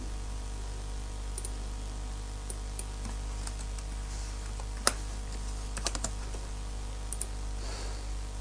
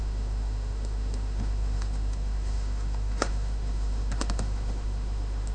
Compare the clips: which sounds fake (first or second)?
second